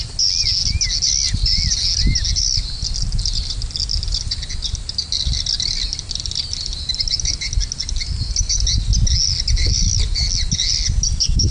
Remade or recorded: recorded